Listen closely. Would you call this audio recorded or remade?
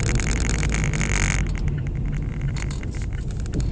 recorded